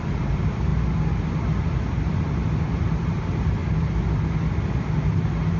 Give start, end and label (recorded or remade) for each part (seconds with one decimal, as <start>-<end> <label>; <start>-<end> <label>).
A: 0.0-0.7 remade; 0.7-2.5 recorded; 2.5-3.6 remade; 3.6-5.1 recorded; 5.1-5.6 remade